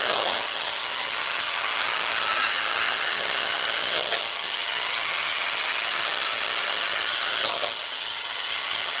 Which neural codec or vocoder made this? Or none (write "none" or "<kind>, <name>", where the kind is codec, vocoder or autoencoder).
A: vocoder, HiFi-GAN